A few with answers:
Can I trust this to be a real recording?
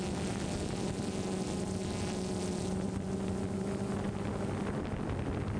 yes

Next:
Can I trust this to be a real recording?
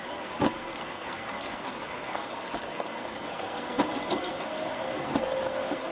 no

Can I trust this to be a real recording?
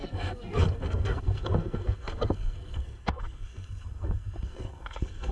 no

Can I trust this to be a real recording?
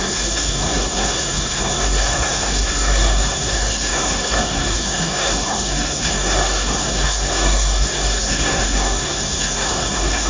no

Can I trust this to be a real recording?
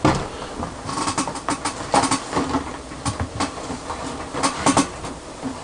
yes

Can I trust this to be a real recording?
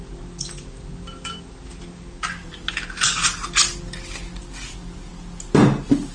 yes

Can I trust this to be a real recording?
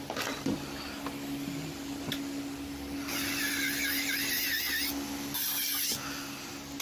yes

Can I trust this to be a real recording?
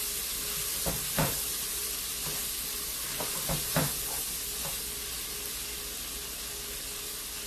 yes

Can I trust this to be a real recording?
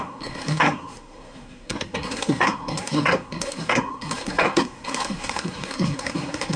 no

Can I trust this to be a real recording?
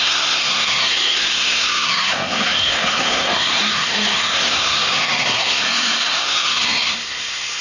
no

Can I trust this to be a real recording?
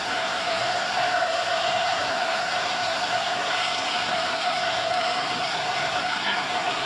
no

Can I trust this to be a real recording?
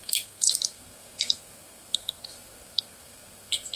no